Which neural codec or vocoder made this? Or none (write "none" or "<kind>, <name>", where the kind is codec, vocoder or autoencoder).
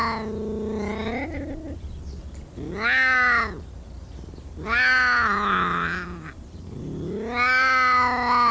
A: none